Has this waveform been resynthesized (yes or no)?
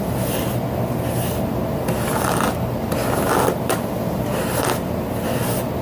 no